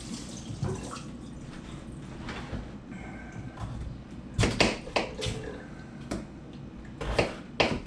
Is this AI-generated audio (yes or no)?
no